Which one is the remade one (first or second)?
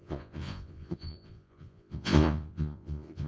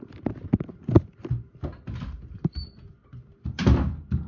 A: first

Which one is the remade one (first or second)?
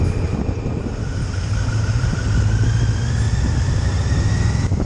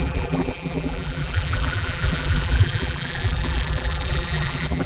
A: second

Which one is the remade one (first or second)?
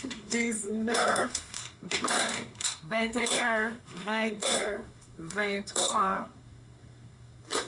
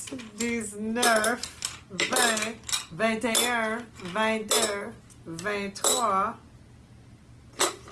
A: first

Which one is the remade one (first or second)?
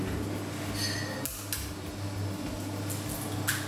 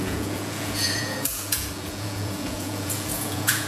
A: second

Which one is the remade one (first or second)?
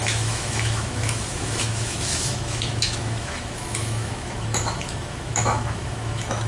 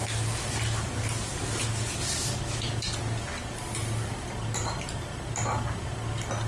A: first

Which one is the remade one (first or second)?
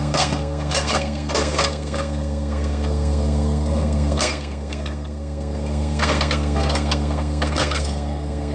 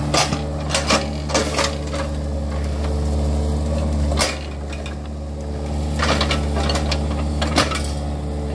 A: first